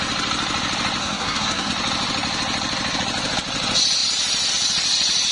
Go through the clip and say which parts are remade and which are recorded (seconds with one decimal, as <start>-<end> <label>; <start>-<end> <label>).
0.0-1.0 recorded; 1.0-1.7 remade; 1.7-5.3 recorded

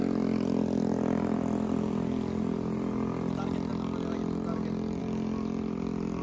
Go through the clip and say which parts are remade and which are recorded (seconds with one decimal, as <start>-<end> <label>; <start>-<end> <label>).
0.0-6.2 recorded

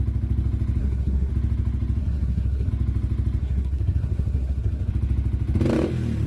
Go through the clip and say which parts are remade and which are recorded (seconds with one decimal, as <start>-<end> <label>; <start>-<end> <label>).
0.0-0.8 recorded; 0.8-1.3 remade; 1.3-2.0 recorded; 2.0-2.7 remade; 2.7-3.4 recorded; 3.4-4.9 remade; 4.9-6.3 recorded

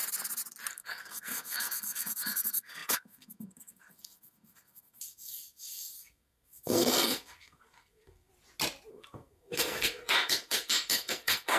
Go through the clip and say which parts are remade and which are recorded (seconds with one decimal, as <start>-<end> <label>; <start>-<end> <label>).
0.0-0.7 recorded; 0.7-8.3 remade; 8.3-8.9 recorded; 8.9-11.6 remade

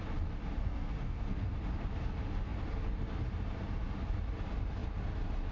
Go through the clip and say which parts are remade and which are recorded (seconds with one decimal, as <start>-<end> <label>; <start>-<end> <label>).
0.0-0.6 recorded; 0.6-1.6 remade; 1.6-5.5 recorded